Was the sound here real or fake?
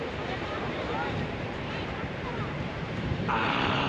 fake